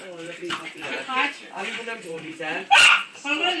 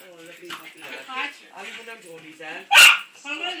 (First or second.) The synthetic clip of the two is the first